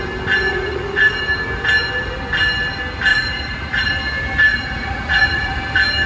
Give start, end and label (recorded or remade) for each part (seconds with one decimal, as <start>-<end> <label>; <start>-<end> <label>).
0.0-0.5 recorded; 0.5-1.2 remade; 1.2-3.1 recorded; 3.1-3.9 remade; 3.9-4.5 recorded; 4.5-5.6 remade; 5.6-6.1 recorded